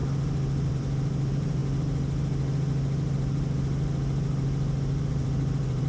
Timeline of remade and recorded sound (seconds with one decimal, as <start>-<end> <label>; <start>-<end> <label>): 0.0-0.7 recorded; 0.7-1.6 remade; 1.6-5.1 recorded; 5.1-5.9 remade